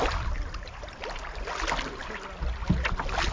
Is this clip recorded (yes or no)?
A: yes